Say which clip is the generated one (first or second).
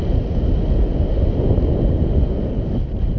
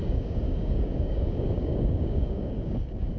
second